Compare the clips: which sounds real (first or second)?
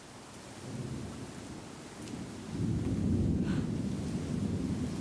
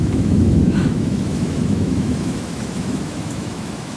first